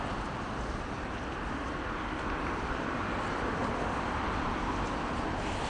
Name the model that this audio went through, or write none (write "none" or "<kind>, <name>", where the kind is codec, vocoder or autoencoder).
none